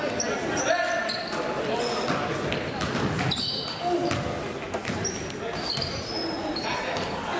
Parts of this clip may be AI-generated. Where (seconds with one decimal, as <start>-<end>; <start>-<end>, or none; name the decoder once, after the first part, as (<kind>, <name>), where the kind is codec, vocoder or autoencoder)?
4.8-5.7 (vocoder, BigVGAN v2)